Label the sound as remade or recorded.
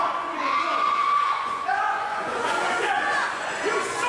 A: remade